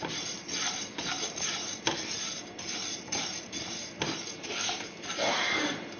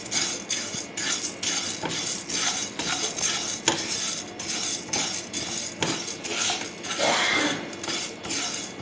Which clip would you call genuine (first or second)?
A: second